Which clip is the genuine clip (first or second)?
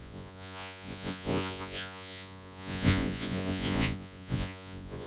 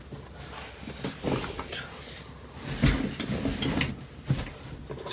second